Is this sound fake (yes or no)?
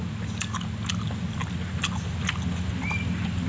no